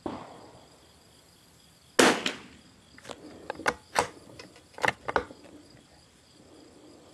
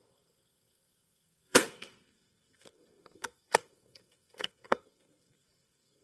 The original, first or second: first